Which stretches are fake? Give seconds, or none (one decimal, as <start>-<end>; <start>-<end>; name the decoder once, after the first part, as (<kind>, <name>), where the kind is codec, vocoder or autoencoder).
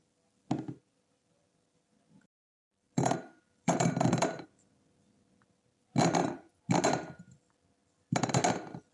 0.8-4.7 (vocoder, BigVGAN v2); 7.8-8.4